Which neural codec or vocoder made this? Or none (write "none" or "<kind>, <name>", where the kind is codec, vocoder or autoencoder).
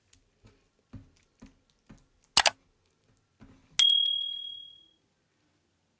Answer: none